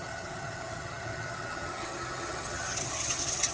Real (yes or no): no